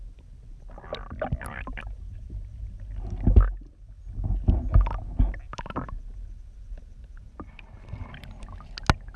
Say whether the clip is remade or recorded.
recorded